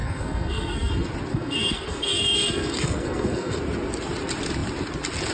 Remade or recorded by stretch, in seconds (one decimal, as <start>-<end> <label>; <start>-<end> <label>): 0.0-0.9 remade; 0.9-1.3 recorded; 1.3-3.6 remade; 3.6-5.3 recorded